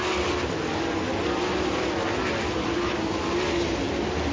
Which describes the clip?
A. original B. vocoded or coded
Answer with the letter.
A